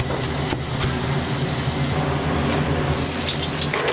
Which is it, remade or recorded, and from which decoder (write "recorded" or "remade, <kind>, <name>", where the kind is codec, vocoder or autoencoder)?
recorded